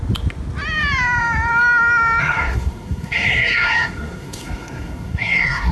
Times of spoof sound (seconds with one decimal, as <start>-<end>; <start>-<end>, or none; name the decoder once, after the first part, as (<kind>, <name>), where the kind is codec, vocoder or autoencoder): 2.2-5.7 (codec, SNAC)